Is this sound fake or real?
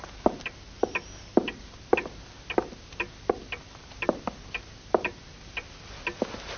real